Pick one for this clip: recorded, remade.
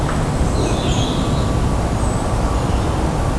recorded